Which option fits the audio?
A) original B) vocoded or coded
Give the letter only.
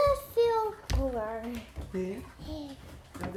A